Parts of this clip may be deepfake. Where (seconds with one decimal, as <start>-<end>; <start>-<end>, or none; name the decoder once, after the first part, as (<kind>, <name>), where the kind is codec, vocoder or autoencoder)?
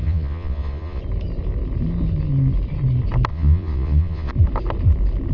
0.0-1.0 (vocoder, Vocos); 3.3-4.3